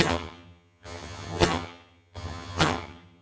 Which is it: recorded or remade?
remade